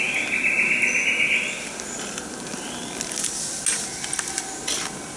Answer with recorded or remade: recorded